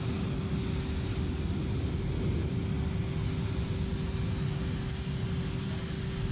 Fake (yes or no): no